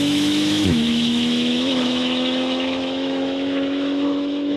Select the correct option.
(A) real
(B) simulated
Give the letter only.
B